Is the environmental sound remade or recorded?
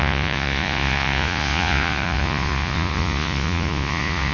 remade